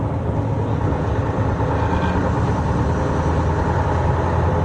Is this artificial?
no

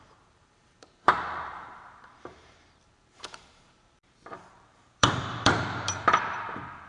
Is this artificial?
yes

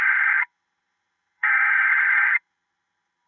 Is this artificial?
yes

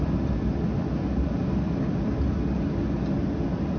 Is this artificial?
no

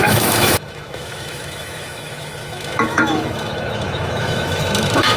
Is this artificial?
yes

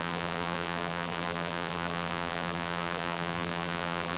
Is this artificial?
yes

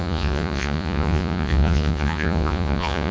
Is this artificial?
yes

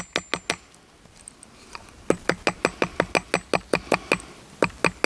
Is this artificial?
no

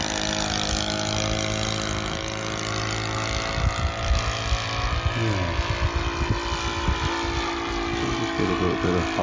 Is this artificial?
no